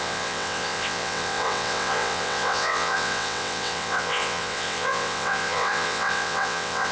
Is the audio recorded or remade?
remade